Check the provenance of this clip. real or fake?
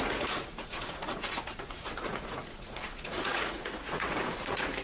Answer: fake